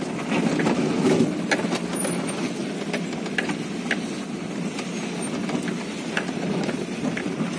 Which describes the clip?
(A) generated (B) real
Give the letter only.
B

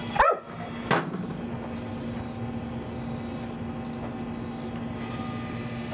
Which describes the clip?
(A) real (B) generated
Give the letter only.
A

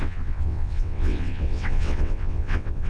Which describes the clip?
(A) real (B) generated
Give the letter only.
B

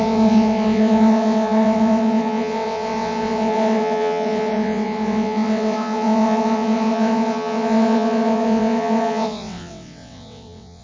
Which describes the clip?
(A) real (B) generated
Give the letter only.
B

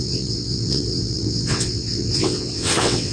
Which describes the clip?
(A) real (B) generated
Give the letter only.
B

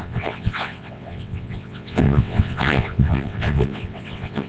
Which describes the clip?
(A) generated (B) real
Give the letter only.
A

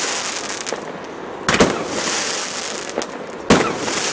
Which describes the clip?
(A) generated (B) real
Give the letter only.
B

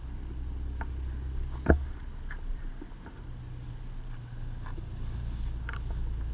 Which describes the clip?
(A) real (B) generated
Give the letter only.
A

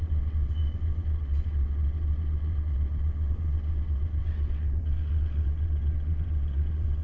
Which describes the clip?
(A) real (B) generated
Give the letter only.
B